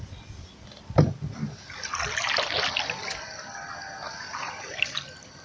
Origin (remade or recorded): recorded